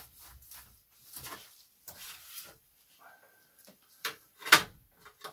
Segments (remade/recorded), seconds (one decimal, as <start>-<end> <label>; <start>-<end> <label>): 0.0-1.4 recorded; 1.4-4.6 remade; 4.6-5.3 recorded